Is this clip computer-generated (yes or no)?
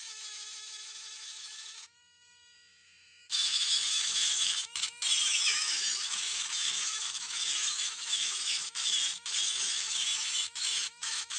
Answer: yes